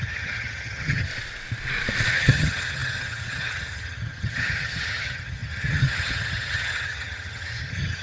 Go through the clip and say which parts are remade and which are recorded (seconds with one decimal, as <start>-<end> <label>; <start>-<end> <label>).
0.0-1.1 remade; 1.1-2.1 recorded; 2.1-8.0 remade